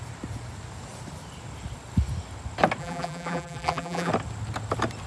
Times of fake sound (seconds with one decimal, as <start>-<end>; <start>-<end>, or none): 2.8-4.1